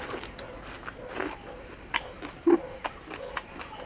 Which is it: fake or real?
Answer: real